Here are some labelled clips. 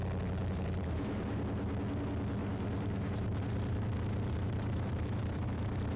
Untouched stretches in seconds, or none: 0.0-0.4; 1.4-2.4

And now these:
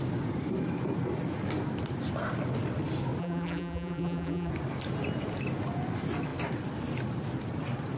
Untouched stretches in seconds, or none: 0.0-3.2; 4.5-8.0

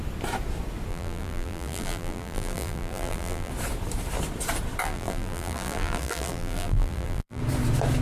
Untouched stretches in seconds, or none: 0.0-0.9; 3.5-4.8; 7.4-8.0